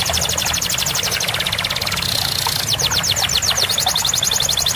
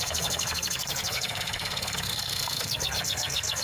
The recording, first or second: first